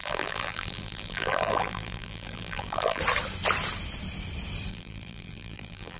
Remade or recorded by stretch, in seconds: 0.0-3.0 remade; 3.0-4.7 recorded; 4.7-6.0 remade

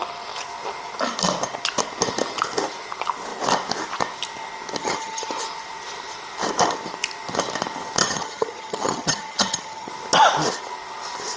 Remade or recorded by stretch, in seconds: 0.0-4.8 recorded; 4.8-5.3 remade; 5.3-8.0 recorded; 8.0-9.9 remade; 9.9-11.4 recorded

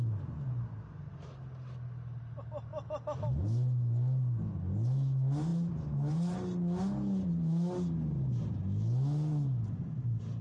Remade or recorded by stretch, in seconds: 0.0-10.4 recorded